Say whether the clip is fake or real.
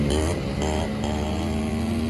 real